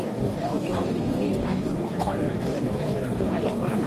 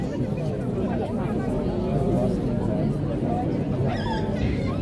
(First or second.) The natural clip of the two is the second